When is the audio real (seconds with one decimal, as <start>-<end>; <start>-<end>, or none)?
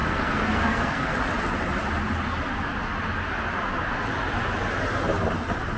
1.1-5.8